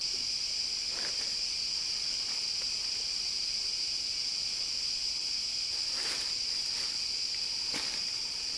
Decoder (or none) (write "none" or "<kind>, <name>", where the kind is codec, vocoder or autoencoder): none